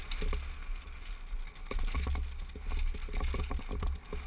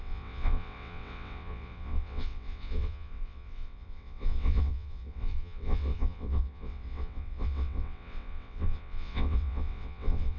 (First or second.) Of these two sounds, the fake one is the second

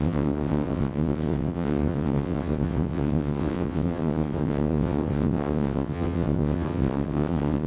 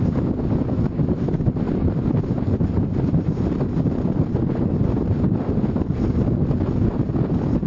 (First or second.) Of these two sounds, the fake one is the first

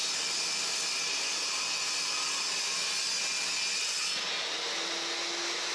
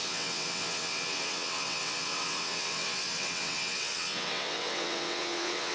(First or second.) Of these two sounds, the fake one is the second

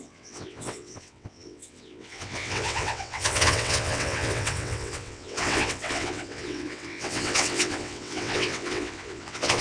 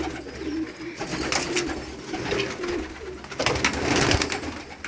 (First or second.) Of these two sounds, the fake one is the first